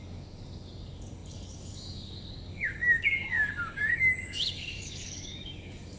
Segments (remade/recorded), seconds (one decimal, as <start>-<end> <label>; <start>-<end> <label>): 0.0-6.0 remade

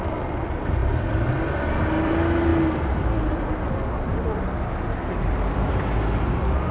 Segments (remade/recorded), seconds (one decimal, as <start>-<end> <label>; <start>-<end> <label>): 0.0-0.8 remade; 0.8-1.3 recorded; 1.3-2.5 remade; 2.5-6.2 recorded; 6.2-6.7 remade